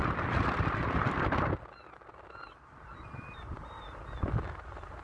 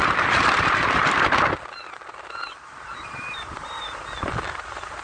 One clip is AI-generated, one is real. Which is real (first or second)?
first